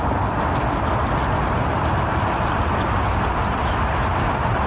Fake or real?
real